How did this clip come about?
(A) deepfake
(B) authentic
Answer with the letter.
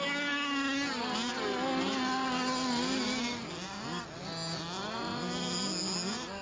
B